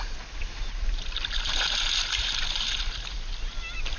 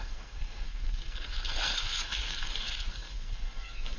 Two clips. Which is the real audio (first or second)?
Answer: first